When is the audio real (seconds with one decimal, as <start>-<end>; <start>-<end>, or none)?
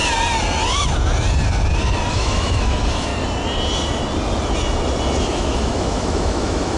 0.0-2.1; 3.1-5.2